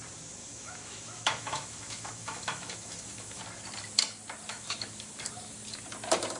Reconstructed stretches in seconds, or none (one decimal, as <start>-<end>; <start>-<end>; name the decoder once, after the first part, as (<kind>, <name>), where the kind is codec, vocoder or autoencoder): 0.4-3.4 (autoencoder, DAC-VAE); 4.5-5.1